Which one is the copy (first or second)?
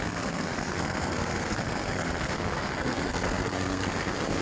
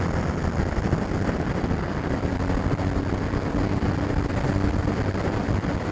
first